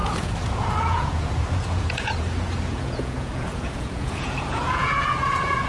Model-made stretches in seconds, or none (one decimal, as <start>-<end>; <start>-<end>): 0.0-5.7